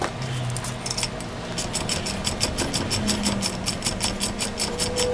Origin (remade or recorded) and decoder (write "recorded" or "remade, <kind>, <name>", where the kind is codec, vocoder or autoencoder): recorded